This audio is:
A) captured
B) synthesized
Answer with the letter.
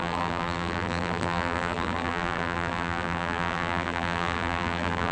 B